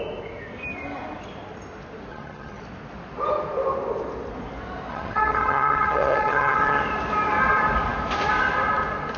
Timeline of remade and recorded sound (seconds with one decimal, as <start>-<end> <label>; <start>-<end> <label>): 0.0-2.1 recorded; 2.1-2.6 remade; 2.6-4.9 recorded; 4.9-6.8 remade; 6.8-9.2 recorded